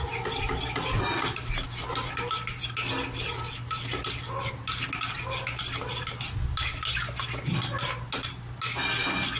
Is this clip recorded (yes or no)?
yes